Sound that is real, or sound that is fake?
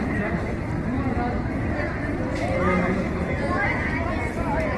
real